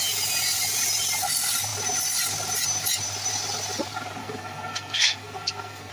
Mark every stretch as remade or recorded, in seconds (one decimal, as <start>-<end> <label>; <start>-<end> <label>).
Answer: 0.0-4.2 recorded; 4.2-5.9 remade